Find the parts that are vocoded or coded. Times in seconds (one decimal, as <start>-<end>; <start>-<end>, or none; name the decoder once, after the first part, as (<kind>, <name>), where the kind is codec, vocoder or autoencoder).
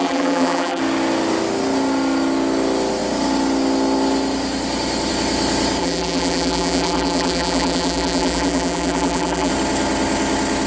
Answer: 0.0-0.8 (vocoder, BigVGAN v2); 5.8-9.5